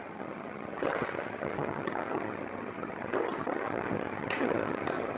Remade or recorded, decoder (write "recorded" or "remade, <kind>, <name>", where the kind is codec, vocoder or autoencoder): remade, vocoder, HiFi-GAN